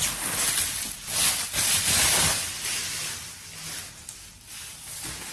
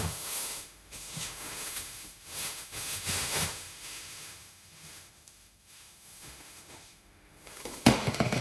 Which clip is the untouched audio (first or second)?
first